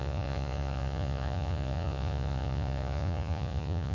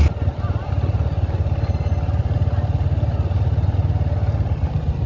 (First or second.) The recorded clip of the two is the second